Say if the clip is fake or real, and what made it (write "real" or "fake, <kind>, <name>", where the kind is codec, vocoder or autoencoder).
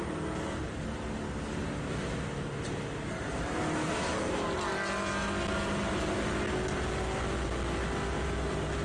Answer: real